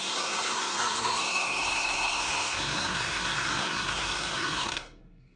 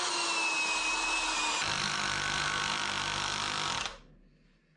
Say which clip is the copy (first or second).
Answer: first